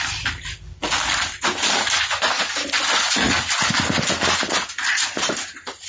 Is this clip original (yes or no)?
yes